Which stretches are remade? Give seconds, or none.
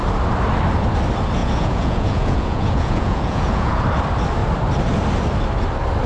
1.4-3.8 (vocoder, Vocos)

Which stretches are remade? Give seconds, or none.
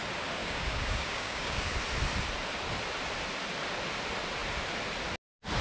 0.4-1.8 (codec, DAC)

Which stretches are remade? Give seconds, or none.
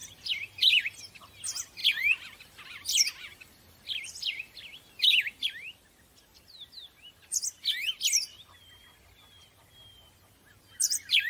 0.0-1.0 (vocoder, BigVGAN v2); 1.8-6.4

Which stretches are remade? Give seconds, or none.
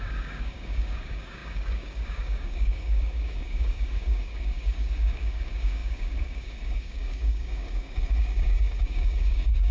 0.0-9.7 (codec, DAC)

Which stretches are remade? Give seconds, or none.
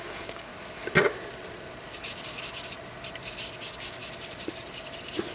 0.0-0.5 (codec, DAC); 3.6-4.0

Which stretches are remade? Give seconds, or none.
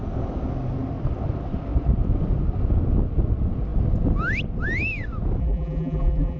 5.4-6.4 (vocoder, BigVGAN v2)